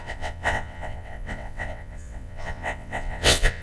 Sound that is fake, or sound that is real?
fake